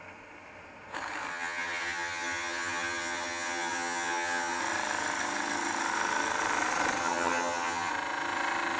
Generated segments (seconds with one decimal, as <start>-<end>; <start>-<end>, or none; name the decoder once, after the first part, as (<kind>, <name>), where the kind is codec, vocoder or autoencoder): 1.3-4.6 (vocoder, HiFi-GAN); 7.0-7.9